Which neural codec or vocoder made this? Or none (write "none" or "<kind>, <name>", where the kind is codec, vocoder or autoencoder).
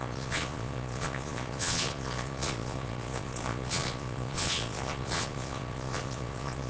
vocoder, Vocos